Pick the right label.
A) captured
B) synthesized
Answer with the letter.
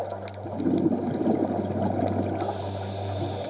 A